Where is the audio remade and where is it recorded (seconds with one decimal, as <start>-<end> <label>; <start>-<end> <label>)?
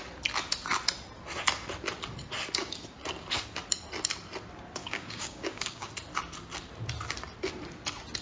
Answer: 0.0-4.8 recorded; 4.8-5.9 remade; 5.9-8.2 recorded